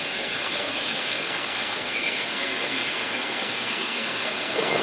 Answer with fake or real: fake